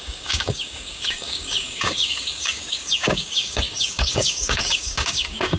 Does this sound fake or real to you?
fake